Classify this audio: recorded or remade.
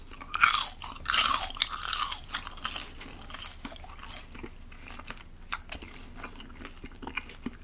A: recorded